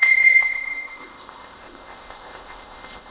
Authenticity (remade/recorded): remade